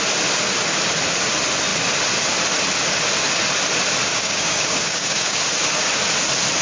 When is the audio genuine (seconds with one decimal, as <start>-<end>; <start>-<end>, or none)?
0.0-4.1; 5.4-6.6